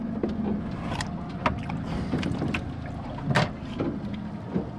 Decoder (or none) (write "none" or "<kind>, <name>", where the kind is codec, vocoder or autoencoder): none